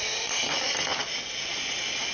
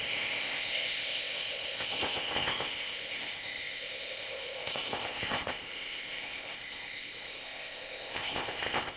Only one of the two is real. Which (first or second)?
first